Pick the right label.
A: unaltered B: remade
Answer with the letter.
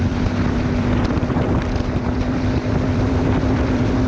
B